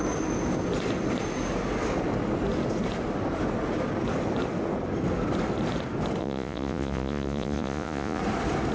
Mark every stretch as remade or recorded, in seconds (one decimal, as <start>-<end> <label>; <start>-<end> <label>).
0.0-6.2 recorded; 6.2-8.2 remade; 8.2-8.7 recorded